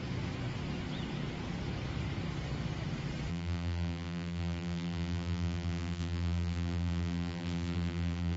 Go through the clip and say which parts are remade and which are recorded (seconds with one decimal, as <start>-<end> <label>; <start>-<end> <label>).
0.0-3.3 recorded; 3.3-8.4 remade